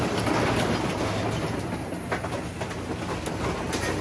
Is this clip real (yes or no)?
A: yes